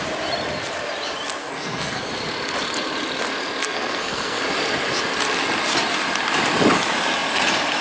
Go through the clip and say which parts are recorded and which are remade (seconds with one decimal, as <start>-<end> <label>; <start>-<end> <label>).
0.0-1.4 recorded; 1.4-2.1 remade; 2.1-3.6 recorded; 3.6-4.4 remade; 4.4-7.8 recorded